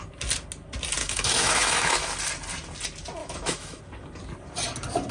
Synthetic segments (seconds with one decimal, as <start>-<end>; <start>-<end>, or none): 1.0-2.1; 3.2-3.8